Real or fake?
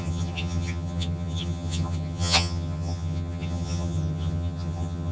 fake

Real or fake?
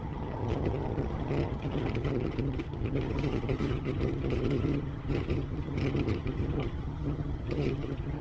fake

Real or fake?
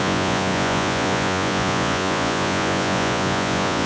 fake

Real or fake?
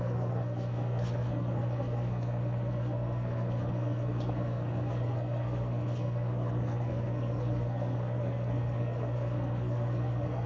fake